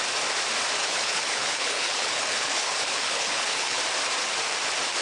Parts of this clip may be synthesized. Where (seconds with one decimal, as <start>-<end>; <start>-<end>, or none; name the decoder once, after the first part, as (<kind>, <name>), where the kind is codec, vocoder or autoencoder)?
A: 0.8-3.8 (codec, HILCodec)